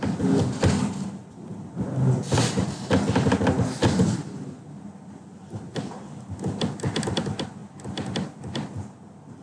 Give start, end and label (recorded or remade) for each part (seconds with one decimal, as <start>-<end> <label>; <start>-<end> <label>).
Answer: 0.0-9.4 recorded